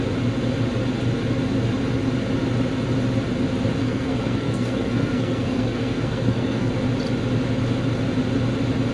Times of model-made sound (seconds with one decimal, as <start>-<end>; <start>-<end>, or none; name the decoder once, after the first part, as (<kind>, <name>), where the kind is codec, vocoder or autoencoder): 3.8-6.7 (codec, SNAC)